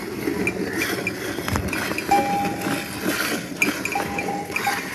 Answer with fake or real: real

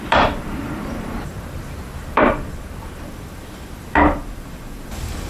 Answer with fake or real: fake